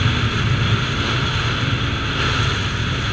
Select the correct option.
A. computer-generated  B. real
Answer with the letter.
B